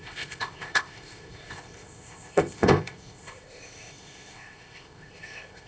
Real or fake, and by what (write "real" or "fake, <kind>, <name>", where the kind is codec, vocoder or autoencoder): fake, codec, ZipCodec